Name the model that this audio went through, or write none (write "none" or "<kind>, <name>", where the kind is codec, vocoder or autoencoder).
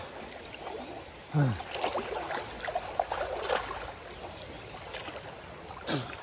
none